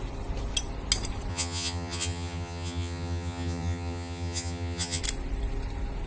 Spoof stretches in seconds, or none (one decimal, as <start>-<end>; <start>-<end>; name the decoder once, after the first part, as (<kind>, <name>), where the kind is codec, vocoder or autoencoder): 1.3-5.0 (vocoder, HiFi-GAN)